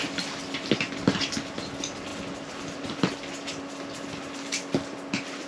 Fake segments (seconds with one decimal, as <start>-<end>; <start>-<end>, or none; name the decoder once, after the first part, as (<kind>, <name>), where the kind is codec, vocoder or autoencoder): none